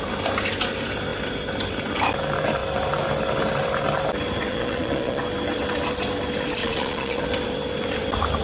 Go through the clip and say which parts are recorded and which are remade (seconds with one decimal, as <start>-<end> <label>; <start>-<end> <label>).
0.0-4.5 recorded; 4.5-5.2 remade; 5.2-6.6 recorded; 6.6-7.2 remade; 7.2-8.4 recorded